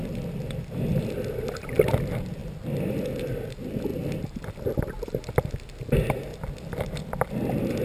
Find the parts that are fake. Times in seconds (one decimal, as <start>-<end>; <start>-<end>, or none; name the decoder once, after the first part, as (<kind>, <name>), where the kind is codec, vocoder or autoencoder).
2.4-3.2 (vocoder, BigVGAN v2); 3.9-5.2; 6.3-7.3